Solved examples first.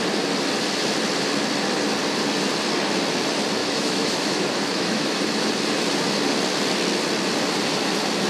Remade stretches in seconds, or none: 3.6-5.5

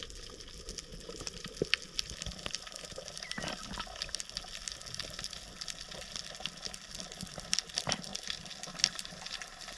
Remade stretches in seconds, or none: 0.9-1.5; 8.1-9.8

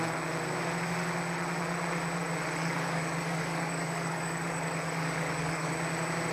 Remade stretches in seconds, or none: 2.6-5.7

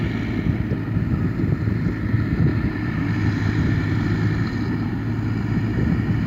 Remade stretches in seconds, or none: 2.5-4.9

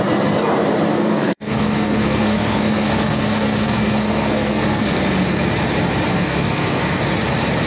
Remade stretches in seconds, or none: 0.9-5.0; 6.1-7.0

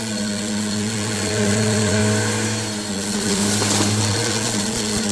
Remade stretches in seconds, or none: 0.0-2.0; 2.9-3.4; 4.0-5.1